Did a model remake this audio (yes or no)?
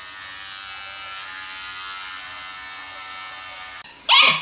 no